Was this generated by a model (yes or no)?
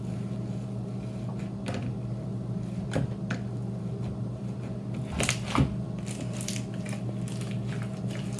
no